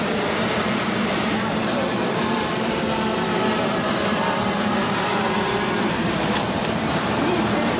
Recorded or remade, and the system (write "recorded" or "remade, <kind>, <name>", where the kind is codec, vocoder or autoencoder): remade, vocoder, BigVGAN v2